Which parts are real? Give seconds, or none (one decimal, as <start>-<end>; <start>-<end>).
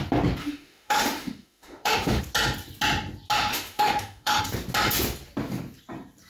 0.0-0.4; 2.2-3.5; 4.4-6.3